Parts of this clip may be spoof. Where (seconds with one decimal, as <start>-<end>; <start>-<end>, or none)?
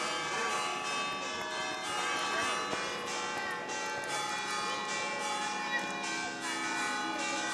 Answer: none